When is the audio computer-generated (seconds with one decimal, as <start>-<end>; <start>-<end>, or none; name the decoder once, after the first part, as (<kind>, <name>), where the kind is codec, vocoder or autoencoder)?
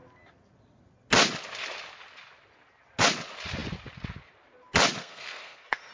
5.0-5.9 (codec, SNAC)